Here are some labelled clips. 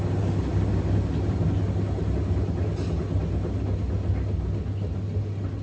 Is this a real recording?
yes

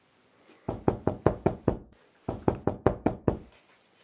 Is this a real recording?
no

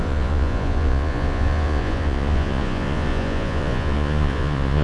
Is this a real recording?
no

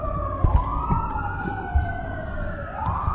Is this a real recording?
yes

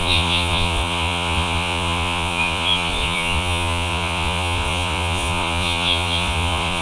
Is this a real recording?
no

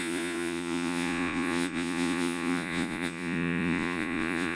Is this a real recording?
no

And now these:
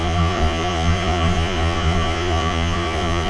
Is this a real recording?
no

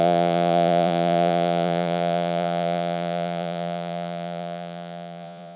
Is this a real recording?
no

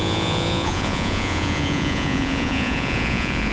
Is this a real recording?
no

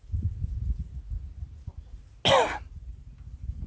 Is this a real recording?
yes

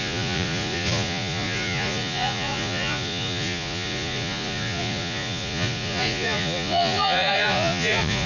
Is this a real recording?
no